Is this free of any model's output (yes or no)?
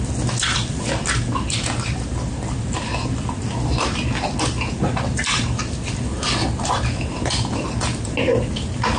yes